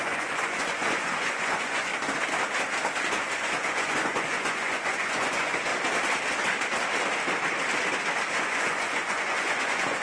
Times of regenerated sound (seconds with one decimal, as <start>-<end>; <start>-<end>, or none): 0.0-1.9; 3.1-5.7; 8.4-10.0